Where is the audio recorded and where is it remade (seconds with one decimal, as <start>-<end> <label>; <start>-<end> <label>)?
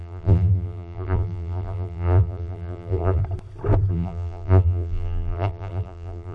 0.0-3.2 remade; 3.2-3.9 recorded; 3.9-6.3 remade